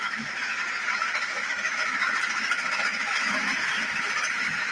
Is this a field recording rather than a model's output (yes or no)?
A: no